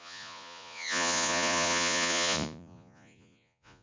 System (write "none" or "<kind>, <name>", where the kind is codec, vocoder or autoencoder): vocoder, Vocos